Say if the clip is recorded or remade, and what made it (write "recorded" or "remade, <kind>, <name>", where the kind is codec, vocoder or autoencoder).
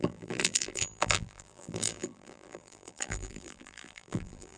remade, vocoder, BigVGAN v2